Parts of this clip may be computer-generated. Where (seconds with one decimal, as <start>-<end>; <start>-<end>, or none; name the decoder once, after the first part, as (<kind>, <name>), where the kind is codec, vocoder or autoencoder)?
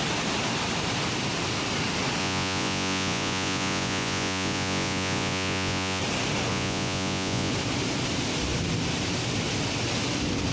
2.2-6.0 (vocoder, Vocos); 6.5-7.5